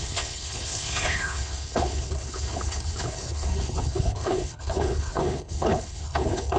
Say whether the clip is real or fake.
fake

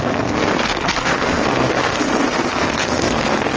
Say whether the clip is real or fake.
fake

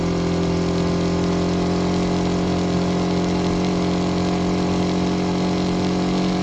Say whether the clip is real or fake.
real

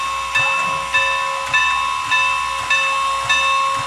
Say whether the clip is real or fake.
real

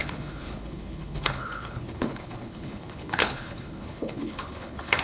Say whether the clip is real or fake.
fake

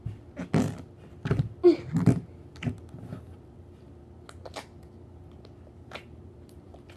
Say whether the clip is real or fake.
real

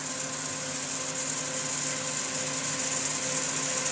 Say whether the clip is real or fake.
real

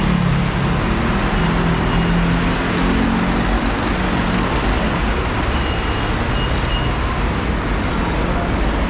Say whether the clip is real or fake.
real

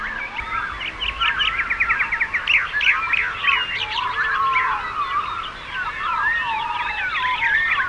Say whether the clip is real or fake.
real